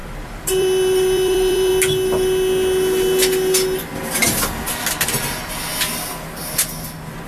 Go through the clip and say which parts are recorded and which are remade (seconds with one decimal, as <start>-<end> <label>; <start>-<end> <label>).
0.0-1.7 remade; 1.7-7.3 recorded